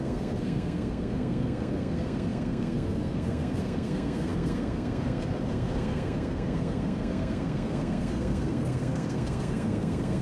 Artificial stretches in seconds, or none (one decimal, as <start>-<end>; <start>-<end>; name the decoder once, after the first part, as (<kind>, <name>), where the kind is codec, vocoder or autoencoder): 0.0-10.2 (codec, SNAC)